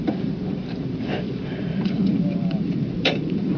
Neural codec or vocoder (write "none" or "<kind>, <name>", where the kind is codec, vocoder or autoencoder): vocoder, BigVGAN v2